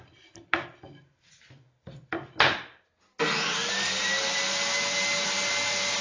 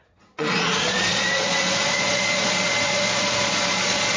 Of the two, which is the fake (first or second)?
second